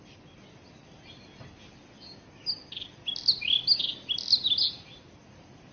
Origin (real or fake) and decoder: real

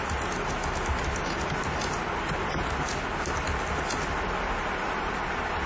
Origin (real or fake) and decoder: real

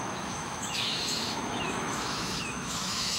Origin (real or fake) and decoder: fake, autoencoder, DAC-VAE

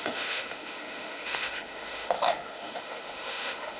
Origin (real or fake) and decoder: fake, autoencoder, DAC-VAE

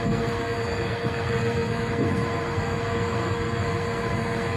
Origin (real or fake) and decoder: fake, codec, SNAC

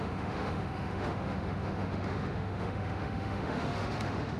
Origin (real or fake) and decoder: fake, autoencoder, DAC-VAE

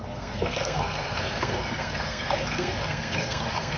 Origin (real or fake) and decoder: fake, codec, SNAC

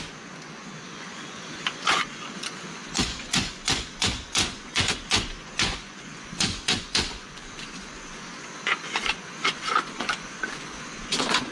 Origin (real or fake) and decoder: fake, vocoder, Vocos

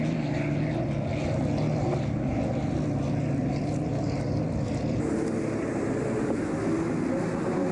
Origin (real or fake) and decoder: real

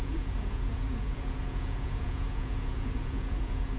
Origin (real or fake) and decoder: fake, vocoder, Vocos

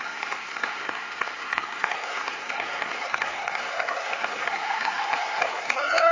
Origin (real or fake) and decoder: fake, codec, SNAC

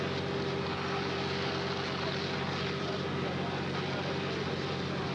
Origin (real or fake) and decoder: real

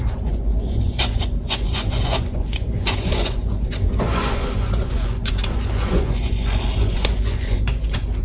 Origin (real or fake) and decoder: fake, vocoder, Vocos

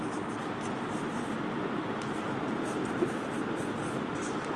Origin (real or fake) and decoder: real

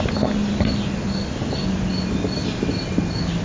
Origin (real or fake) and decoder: real